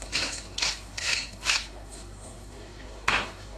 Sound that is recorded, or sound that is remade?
remade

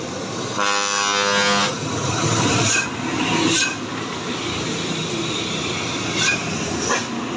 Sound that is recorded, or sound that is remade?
recorded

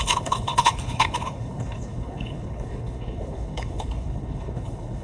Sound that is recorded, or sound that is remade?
remade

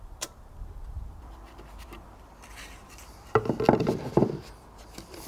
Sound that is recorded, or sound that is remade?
remade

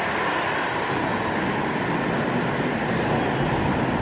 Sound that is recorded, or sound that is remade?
recorded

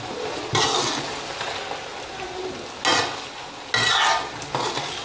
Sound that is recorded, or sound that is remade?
recorded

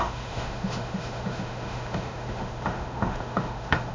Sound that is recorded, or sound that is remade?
remade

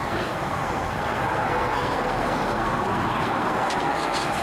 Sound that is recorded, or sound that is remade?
remade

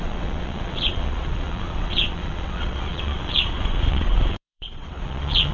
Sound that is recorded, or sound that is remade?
remade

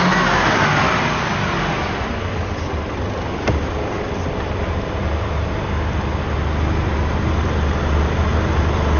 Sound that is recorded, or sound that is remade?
recorded